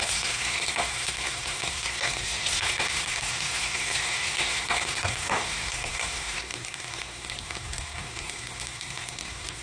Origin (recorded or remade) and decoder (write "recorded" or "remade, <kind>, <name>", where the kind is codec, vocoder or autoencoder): remade, codec, SNAC